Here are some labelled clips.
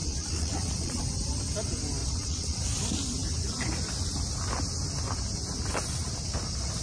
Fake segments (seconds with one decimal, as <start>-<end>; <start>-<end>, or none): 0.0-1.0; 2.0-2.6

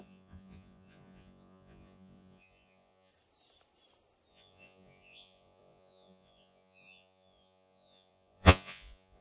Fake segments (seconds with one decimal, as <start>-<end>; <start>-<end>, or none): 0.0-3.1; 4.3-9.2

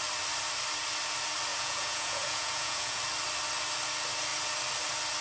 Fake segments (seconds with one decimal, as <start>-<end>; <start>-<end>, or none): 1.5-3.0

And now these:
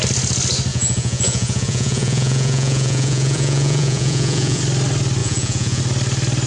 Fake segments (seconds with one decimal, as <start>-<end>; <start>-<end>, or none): 0.7-4.6; 5.2-5.8

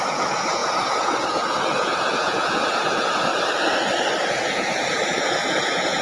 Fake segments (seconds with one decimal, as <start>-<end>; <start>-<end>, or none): 0.0-3.3; 4.3-6.0

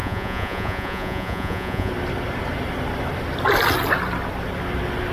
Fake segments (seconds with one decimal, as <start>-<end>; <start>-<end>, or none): 0.0-1.9

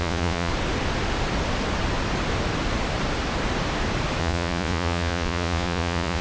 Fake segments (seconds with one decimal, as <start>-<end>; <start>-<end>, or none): 0.0-0.5; 4.2-6.2